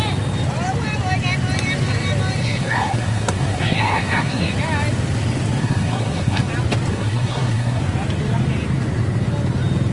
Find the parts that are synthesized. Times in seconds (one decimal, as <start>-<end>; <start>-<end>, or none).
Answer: 2.4-4.5; 5.6-6.5; 6.9-7.8